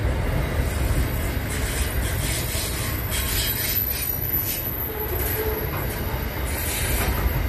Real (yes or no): yes